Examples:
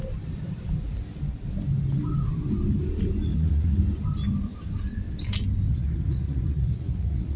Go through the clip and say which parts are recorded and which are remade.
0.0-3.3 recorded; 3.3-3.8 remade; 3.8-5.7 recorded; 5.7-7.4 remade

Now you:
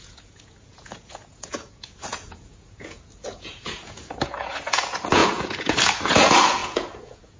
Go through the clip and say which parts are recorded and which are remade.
0.0-7.4 remade